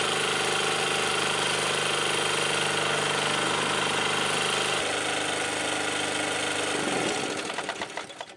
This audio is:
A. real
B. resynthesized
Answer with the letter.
A